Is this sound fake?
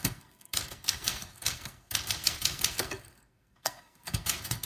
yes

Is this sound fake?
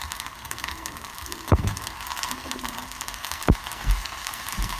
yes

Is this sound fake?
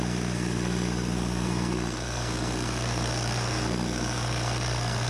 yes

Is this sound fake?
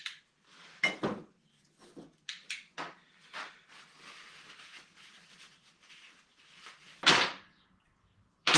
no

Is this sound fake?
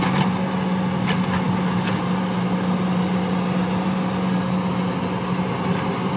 no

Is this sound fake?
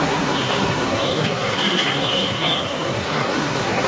yes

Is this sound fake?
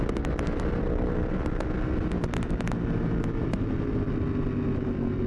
no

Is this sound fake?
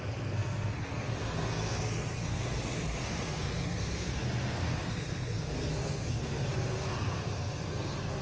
yes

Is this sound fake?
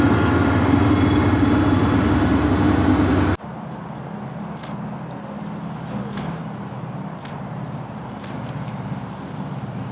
no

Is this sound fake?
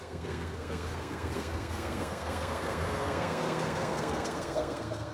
yes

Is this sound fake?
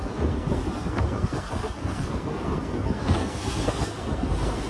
yes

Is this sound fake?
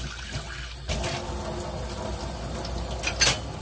no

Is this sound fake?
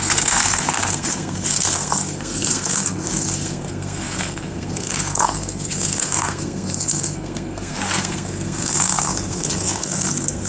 yes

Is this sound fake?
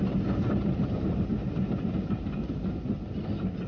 no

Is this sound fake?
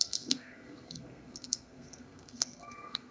yes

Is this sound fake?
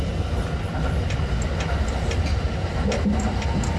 no